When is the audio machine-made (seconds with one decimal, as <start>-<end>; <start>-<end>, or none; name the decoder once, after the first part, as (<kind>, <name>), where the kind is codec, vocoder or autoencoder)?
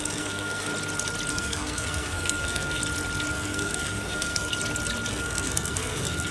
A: 0.0-0.7 (codec, SNAC); 1.3-2.8; 3.3-4.5; 5.1-6.3